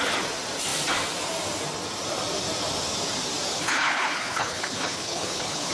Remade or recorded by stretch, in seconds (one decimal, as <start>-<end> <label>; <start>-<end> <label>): 0.0-3.5 recorded; 3.5-5.7 remade